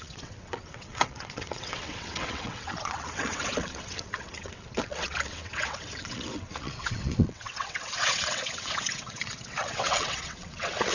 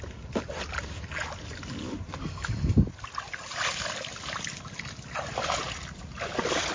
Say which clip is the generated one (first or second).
first